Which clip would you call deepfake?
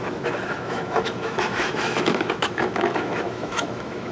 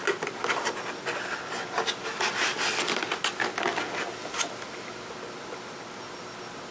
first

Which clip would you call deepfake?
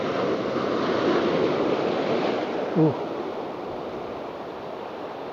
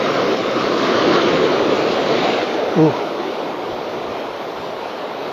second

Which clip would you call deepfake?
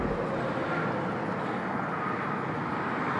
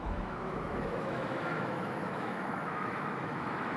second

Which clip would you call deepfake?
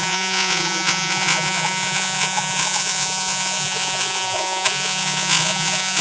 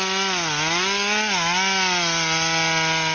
first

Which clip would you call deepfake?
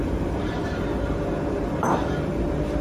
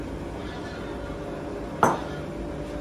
first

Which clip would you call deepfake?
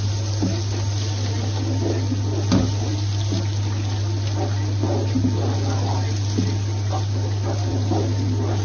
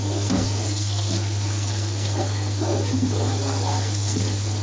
second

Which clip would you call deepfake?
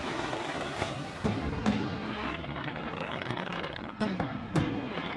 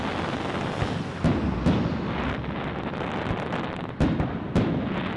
first